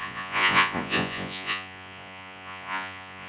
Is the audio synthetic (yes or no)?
yes